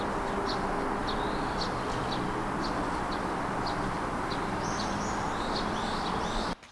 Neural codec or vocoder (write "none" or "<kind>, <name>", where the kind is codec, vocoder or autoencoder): none